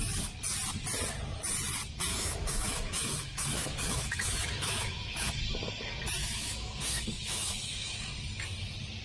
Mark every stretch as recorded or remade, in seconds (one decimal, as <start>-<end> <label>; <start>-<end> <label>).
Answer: 0.0-2.1 recorded; 2.1-5.3 remade; 5.3-6.2 recorded; 6.2-8.1 remade; 8.1-9.0 recorded